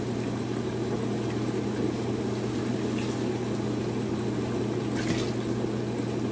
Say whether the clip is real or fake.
real